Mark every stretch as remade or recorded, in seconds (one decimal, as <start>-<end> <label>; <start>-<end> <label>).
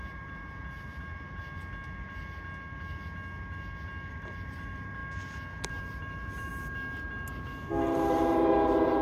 0.0-1.4 remade; 1.4-4.1 recorded; 4.1-5.0 remade; 5.0-5.7 recorded; 5.7-6.5 remade; 6.5-7.8 recorded; 7.8-9.0 remade